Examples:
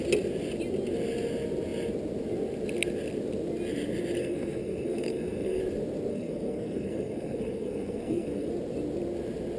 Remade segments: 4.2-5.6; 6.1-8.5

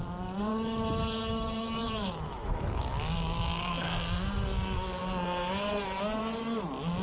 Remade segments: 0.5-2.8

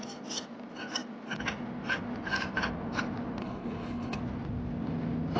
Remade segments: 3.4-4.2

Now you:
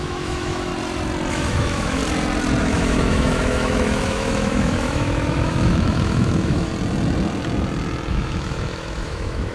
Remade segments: 0.0-0.7; 1.3-2.0; 2.6-6.7; 8.1-9.5